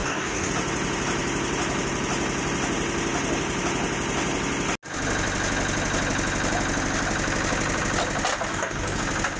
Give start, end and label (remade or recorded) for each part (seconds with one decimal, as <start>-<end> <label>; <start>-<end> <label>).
0.0-0.5 remade; 0.5-8.5 recorded; 8.5-9.0 remade; 9.0-9.4 recorded